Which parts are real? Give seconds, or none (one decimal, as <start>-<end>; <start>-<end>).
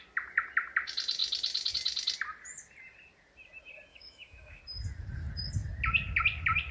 0.0-3.9; 4.6-6.7